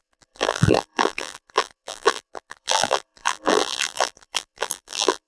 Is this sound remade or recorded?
remade